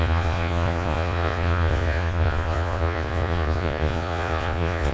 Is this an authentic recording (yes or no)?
no